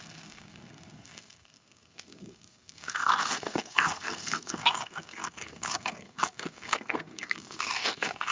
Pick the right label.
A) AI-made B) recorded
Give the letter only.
A